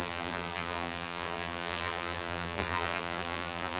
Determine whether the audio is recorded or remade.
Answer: remade